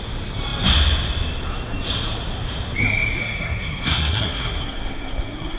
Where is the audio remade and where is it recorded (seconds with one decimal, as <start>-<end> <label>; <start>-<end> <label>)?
0.0-3.2 recorded; 3.2-5.6 remade